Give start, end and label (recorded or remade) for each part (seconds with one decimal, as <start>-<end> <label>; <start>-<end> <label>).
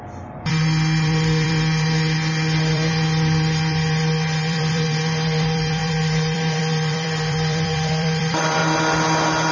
0.0-8.6 remade; 8.6-9.5 recorded